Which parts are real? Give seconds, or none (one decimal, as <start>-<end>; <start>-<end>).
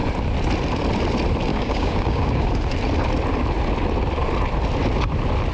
0.0-1.5; 2.5-5.5